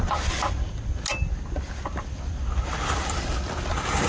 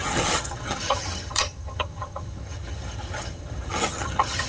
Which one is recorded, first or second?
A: first